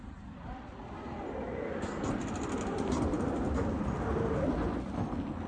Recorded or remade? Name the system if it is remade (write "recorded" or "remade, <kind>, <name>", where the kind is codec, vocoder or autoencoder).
recorded